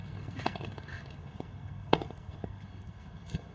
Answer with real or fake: fake